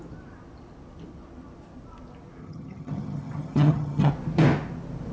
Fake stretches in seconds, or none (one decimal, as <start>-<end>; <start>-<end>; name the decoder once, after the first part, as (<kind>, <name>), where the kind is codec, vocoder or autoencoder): 2.4-4.1 (vocoder, HiFi-GAN)